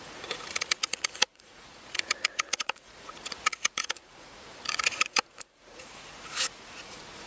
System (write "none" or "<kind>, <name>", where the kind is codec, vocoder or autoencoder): vocoder, Vocos